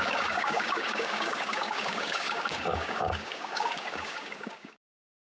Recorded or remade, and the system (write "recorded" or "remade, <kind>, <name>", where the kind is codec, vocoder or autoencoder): remade, codec, DAC